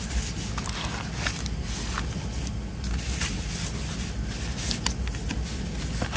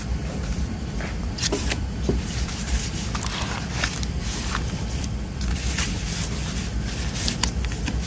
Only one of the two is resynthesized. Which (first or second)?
second